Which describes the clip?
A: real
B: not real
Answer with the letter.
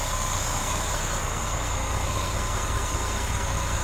B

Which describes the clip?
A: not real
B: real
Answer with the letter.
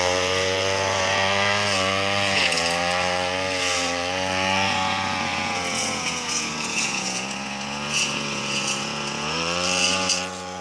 A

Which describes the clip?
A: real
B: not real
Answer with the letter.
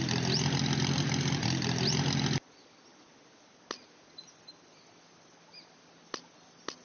A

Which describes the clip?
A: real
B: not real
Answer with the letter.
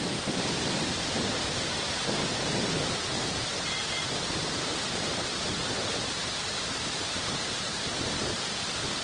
B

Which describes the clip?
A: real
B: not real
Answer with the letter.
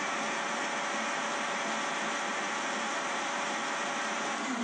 A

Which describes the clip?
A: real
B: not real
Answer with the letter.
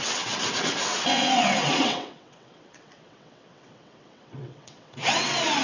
B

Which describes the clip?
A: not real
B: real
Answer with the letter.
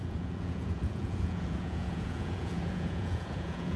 A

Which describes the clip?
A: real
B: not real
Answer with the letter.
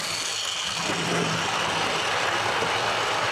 A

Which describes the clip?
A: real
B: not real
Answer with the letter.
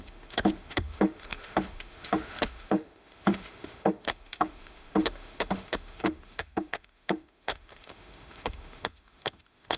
B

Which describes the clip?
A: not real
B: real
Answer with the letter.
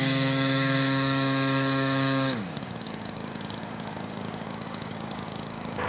A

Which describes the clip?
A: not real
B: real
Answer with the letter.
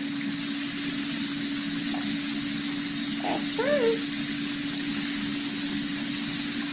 B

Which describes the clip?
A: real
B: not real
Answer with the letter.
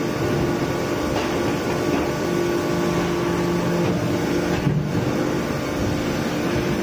A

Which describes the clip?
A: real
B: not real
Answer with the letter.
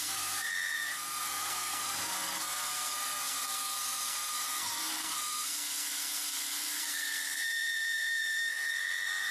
B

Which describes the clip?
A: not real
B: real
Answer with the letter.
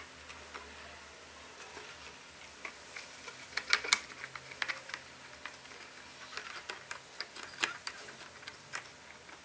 B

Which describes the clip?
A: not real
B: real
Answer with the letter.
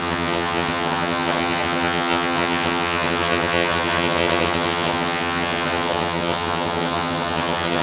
A